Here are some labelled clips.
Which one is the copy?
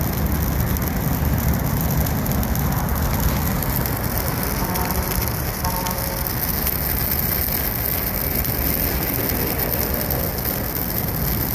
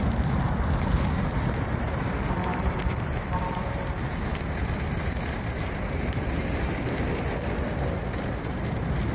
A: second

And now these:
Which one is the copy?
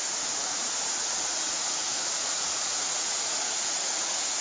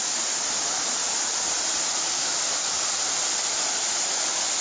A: first